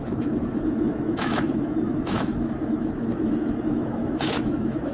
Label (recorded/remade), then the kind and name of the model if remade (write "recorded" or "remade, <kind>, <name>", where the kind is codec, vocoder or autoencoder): remade, autoencoder, DAC-VAE